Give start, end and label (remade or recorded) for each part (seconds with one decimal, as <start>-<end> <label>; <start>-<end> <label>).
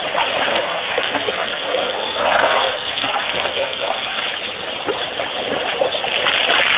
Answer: 0.0-0.5 recorded; 0.5-4.2 remade; 4.2-6.8 recorded